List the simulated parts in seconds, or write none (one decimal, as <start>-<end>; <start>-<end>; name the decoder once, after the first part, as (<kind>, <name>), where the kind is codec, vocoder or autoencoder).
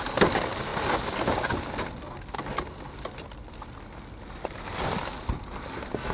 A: none